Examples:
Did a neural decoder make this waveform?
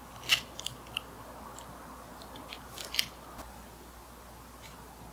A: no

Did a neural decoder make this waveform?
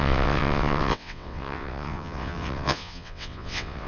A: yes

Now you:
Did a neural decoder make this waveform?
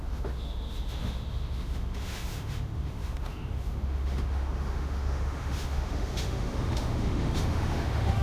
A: yes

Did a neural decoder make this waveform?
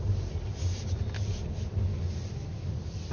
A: no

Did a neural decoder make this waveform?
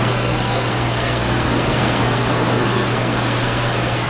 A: yes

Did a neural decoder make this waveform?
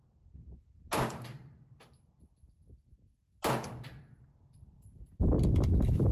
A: no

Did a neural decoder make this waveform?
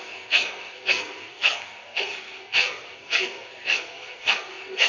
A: yes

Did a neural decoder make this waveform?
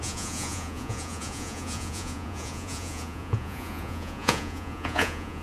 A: yes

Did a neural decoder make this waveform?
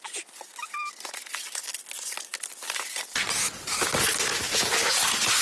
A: no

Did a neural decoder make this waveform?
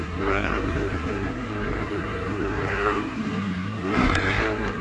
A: yes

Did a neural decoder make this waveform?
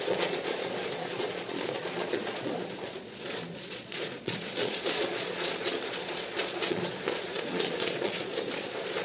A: yes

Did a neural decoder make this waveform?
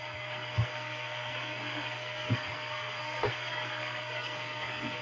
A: yes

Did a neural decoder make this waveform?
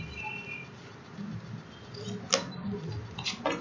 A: no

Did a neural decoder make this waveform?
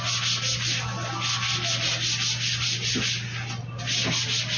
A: no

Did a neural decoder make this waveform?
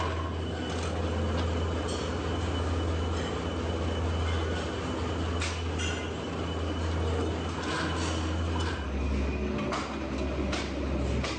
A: no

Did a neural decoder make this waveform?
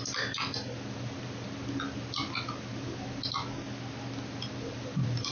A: no